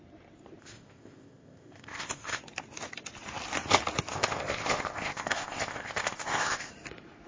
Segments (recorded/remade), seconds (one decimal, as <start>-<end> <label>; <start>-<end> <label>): 0.0-0.6 recorded; 0.6-2.4 remade; 2.4-4.1 recorded; 4.1-6.7 remade; 6.7-7.3 recorded